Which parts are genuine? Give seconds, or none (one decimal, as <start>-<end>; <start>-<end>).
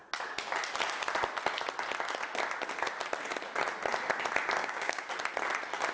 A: 0.0-4.6; 5.1-5.9